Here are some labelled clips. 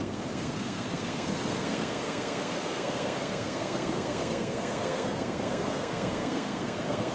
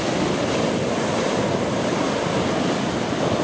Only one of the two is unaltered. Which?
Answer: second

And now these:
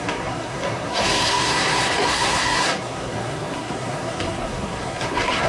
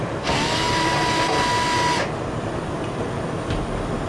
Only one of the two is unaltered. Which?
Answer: second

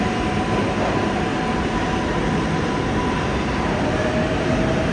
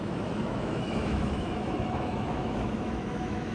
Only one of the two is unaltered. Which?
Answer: first